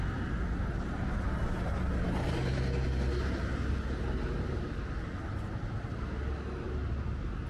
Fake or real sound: real